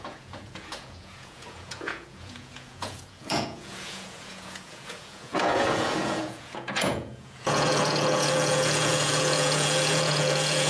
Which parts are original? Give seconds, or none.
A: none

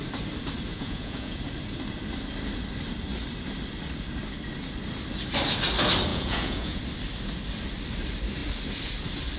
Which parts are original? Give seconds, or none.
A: 0.0-0.7; 1.4-6.1; 6.8-9.4

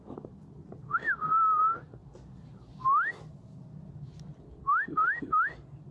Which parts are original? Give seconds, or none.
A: 0.0-5.9

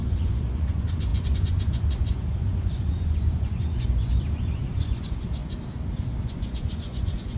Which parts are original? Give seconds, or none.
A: 5.4-6.2